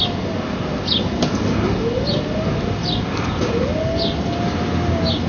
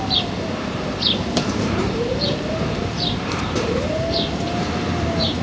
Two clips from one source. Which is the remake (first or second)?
second